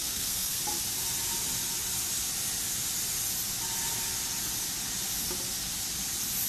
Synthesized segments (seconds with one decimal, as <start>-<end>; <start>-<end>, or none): 0.0-0.6